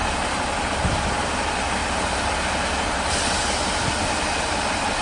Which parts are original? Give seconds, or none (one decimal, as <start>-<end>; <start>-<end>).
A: 0.0-5.0